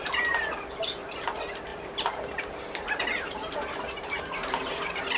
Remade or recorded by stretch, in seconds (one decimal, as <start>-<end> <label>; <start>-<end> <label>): 0.0-1.7 recorded; 1.7-4.8 remade; 4.8-5.2 recorded